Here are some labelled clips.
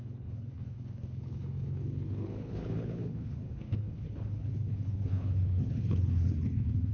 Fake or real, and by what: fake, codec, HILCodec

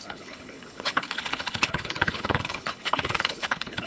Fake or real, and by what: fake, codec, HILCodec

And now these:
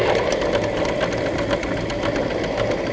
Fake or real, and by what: real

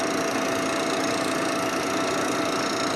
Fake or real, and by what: real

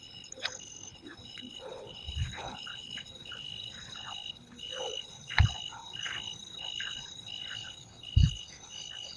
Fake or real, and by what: fake, codec, HILCodec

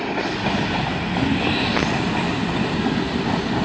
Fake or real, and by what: real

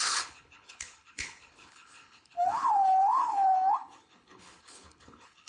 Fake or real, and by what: fake, codec, HILCodec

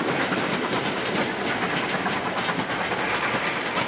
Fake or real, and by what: real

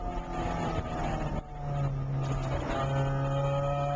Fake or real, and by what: real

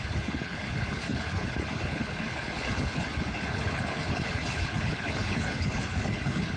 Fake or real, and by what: fake, codec, HILCodec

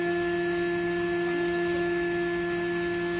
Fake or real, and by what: real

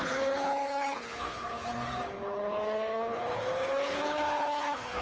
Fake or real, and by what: fake, codec, HILCodec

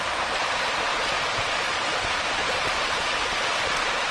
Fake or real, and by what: real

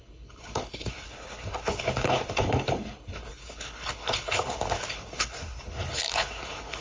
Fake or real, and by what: fake, codec, HILCodec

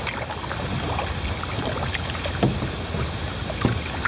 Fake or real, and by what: real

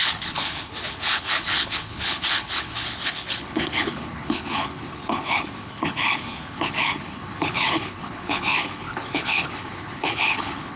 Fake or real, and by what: fake, codec, HILCodec